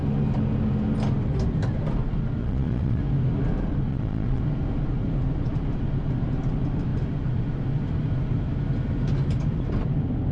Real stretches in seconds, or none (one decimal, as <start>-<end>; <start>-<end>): 0.0-2.4; 3.0-3.9; 4.4-10.3